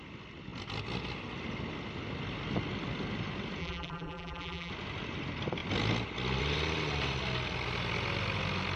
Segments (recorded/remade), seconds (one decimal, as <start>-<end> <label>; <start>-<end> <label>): 0.0-3.6 recorded; 3.6-4.7 remade; 4.7-8.8 recorded